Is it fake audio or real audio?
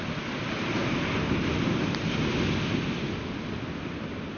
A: real